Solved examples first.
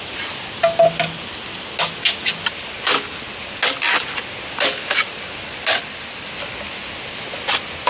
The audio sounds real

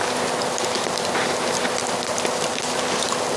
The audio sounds fake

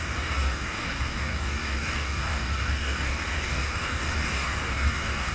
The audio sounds fake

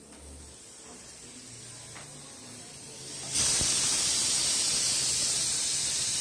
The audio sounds real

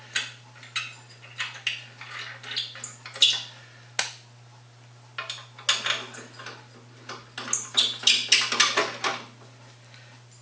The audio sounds real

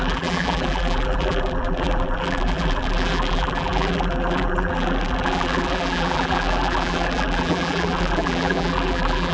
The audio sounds fake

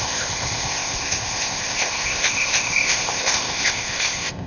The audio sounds fake